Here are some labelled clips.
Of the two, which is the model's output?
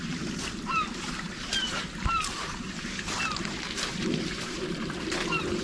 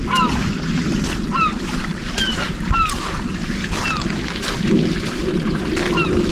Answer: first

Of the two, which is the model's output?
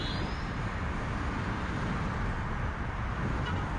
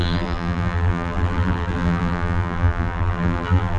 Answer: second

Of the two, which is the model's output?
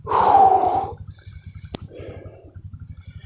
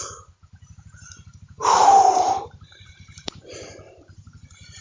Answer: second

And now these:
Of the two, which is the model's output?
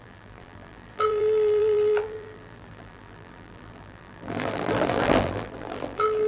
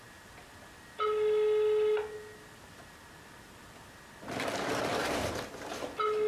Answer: first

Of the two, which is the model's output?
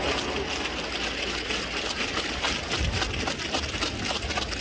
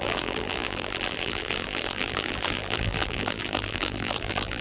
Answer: second